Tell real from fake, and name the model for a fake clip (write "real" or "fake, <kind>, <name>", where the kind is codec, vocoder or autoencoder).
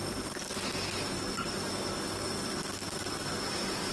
real